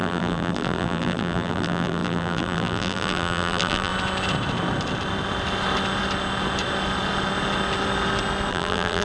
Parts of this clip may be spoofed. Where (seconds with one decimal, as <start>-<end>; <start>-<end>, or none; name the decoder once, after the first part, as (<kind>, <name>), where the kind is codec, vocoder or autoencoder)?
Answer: 0.0-3.9 (vocoder, BigVGAN v2); 8.5-9.0